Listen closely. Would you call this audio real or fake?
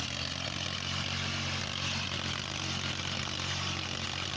real